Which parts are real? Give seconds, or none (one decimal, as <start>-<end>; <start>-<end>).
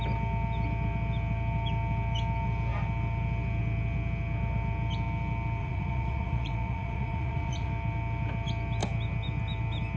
0.0-5.6; 7.7-10.0